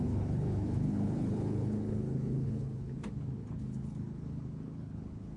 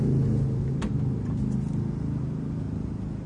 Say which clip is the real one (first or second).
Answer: second